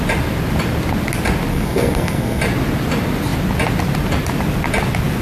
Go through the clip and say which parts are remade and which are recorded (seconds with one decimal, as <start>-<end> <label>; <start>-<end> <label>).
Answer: 0.0-1.5 recorded; 1.5-2.4 remade; 2.4-5.2 recorded